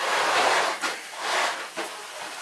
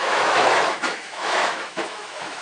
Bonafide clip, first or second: first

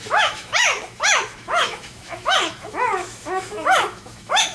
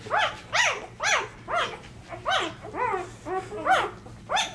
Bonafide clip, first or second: second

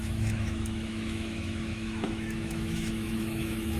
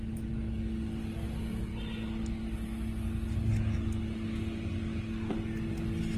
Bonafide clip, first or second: second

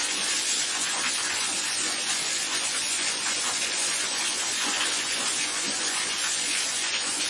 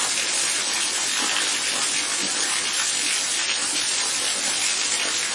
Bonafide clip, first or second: second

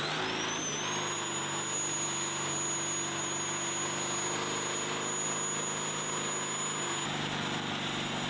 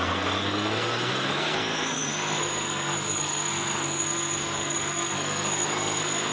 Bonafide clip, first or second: first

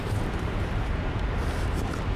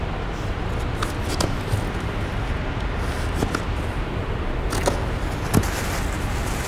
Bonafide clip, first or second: second